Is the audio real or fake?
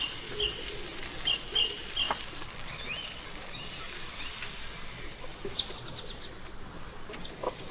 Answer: real